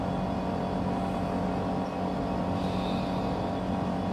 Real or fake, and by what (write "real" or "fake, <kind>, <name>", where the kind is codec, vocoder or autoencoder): real